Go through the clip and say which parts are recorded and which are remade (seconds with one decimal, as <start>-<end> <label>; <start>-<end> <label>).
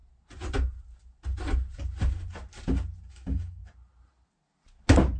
0.0-3.1 recorded; 3.1-3.6 remade; 3.6-5.2 recorded